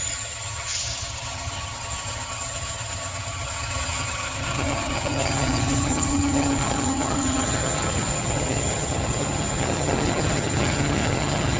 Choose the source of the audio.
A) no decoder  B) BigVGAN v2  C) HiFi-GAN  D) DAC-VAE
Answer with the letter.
C